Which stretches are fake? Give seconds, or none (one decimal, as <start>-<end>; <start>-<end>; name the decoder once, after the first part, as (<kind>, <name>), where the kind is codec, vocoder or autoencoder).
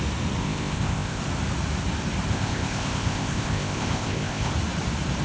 0.4-1.2 (codec, ZipCodec); 2.3-4.5